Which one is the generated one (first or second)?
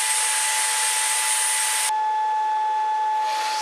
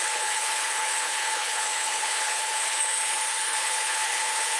second